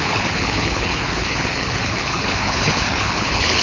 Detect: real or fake fake